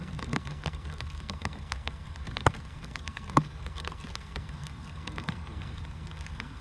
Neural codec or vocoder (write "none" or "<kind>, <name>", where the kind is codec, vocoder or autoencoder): codec, SNAC